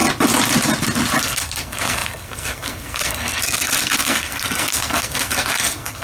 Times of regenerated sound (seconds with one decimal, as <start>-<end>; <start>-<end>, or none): 1.2-6.0